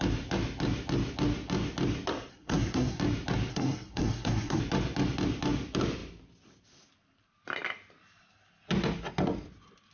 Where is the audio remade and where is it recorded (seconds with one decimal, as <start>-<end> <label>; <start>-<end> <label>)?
0.0-2.3 recorded; 2.3-3.0 remade; 3.0-3.5 recorded; 3.5-4.6 remade; 4.6-9.9 recorded